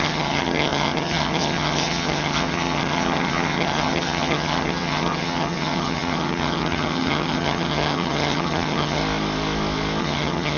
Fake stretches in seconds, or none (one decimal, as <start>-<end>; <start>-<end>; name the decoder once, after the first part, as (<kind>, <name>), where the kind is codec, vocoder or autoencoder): 0.0-9.0 (vocoder, HiFi-GAN); 10.0-10.6